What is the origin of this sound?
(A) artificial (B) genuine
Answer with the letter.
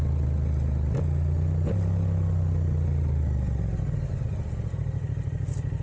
B